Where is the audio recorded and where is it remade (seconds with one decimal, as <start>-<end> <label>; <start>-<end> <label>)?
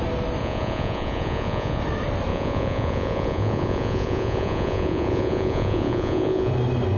0.0-0.4 recorded; 0.4-1.8 remade; 1.8-2.3 recorded; 2.3-6.5 remade; 6.5-7.0 recorded